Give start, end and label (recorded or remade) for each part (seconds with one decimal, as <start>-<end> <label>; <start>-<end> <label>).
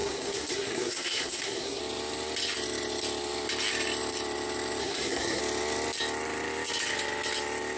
0.0-1.8 remade; 1.8-4.8 recorded; 4.8-5.4 remade; 5.4-7.8 recorded